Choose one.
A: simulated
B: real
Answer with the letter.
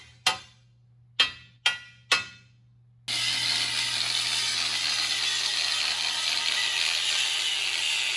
B